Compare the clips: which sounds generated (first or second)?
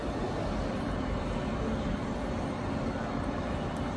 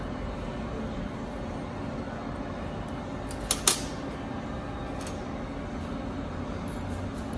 first